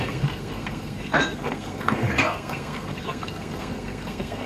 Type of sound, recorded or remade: remade